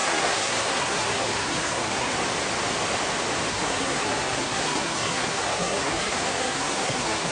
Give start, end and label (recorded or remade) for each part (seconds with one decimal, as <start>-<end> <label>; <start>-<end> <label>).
0.0-2.1 remade; 2.1-3.5 recorded; 3.5-7.3 remade